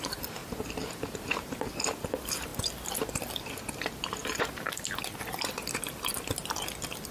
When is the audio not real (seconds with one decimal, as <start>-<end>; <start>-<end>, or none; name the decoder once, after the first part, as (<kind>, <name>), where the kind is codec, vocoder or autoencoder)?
0.4-0.9 (vocoder, BigVGAN v2); 4.2-5.0